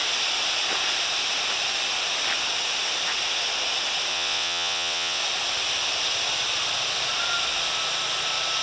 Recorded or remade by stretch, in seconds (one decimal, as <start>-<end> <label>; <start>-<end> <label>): 0.0-4.1 recorded; 4.1-5.2 remade; 5.2-8.6 recorded